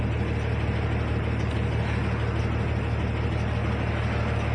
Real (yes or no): yes